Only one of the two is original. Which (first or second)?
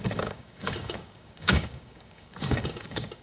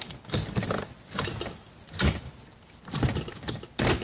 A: second